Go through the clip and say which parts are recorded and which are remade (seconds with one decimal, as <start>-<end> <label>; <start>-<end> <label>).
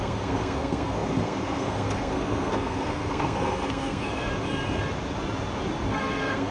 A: 0.0-4.3 remade; 4.3-5.9 recorded; 5.9-6.5 remade